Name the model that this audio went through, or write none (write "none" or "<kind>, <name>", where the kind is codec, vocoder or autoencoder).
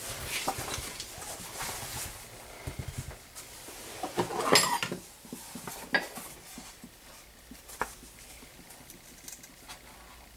none